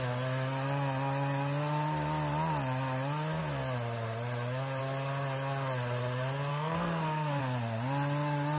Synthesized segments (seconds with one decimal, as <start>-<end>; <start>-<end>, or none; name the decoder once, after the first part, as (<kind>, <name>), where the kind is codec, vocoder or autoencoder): 6.5-7.4 (codec, SNAC)